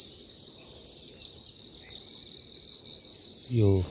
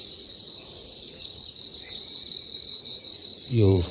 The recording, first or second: first